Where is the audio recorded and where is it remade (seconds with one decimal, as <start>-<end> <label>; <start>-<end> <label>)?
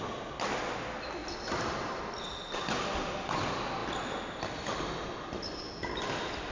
0.0-1.2 recorded; 1.2-2.0 remade; 2.0-3.8 recorded; 3.8-4.8 remade; 4.8-6.5 recorded